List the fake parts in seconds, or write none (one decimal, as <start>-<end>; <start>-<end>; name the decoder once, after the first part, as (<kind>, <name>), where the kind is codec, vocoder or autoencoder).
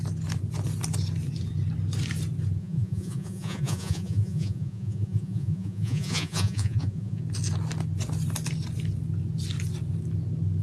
2.6-7.2 (vocoder, Vocos)